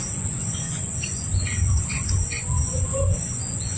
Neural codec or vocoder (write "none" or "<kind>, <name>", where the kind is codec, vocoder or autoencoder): vocoder, Vocos